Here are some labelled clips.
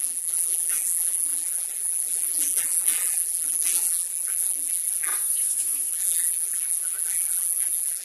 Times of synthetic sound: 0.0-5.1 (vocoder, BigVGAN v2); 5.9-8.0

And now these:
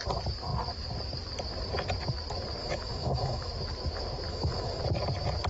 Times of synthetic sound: 2.6-3.5 (autoencoder, DAC-VAE); 4.3-4.8

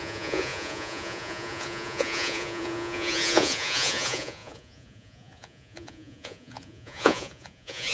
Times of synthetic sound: 0.0-7.9 (vocoder, Vocos)

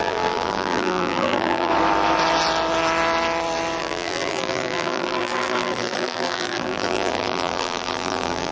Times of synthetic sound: 0.0-1.7 (vocoder, BigVGAN v2); 3.8-8.5

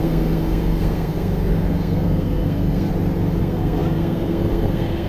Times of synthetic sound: 0.0-2.9 (codec, SNAC); 3.4-5.1

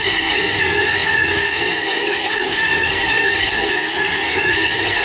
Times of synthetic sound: 0.0-5.0 (codec, SNAC)

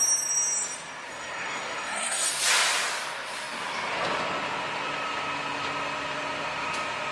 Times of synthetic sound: 1.1-2.3 (codec, SNAC)

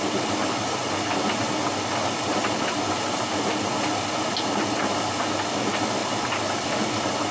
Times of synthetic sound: 6.0-7.3 (vocoder, BigVGAN v2)